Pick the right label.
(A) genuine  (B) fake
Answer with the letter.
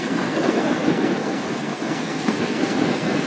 B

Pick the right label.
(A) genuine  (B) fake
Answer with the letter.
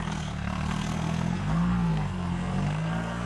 B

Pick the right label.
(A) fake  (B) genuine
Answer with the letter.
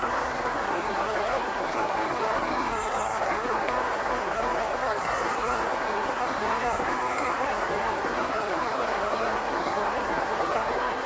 A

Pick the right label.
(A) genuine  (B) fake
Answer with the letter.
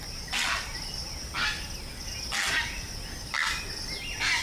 A